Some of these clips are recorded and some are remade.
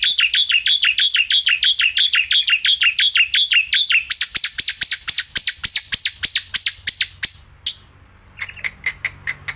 recorded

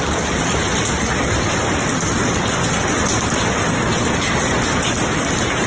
recorded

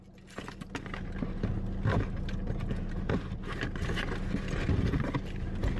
recorded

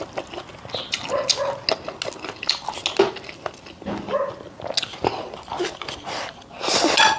recorded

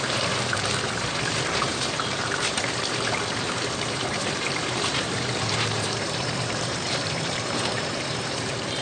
remade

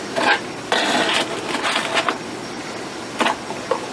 recorded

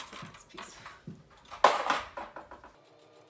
recorded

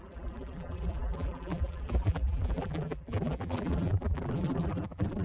remade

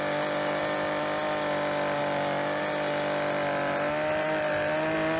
recorded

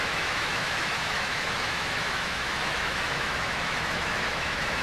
remade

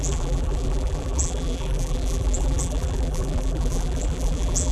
remade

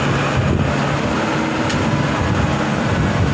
recorded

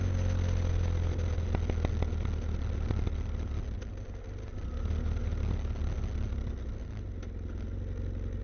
recorded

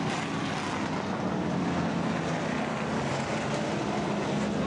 recorded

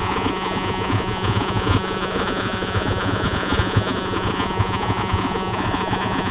remade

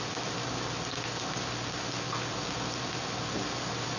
recorded